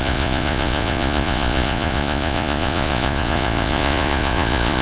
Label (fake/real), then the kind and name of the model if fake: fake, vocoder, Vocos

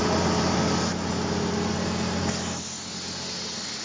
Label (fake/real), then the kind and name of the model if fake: real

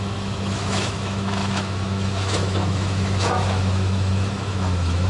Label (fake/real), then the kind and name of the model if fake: fake, autoencoder, DAC-VAE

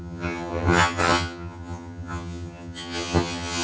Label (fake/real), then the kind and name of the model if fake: fake, vocoder, HiFi-GAN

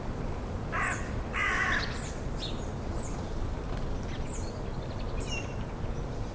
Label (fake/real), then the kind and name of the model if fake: real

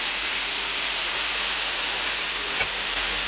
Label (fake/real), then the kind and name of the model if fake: fake, vocoder, BigVGAN v2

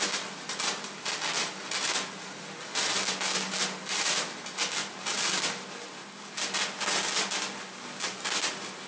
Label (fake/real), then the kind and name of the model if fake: real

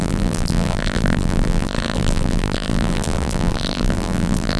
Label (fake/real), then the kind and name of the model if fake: fake, vocoder, BigVGAN v2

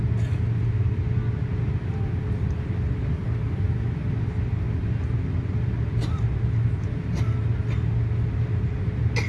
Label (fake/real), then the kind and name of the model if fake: real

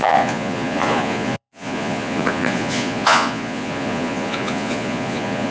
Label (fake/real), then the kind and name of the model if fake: fake, vocoder, Vocos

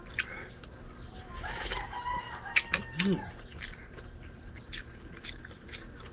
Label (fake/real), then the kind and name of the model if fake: real